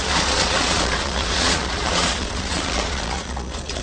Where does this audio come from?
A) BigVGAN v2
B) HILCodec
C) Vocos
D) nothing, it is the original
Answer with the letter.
C